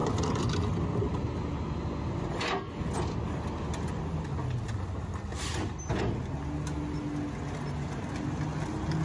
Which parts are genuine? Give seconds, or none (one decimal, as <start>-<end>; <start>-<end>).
0.0-9.0